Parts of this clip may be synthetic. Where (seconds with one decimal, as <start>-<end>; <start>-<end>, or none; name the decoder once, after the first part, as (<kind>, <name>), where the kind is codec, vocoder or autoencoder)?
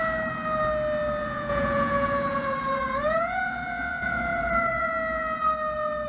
1.2-4.9 (vocoder, Vocos)